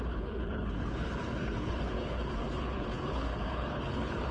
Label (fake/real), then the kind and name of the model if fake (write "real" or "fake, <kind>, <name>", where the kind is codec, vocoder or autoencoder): fake, codec, HILCodec